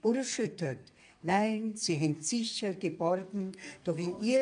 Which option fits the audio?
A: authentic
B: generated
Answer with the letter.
B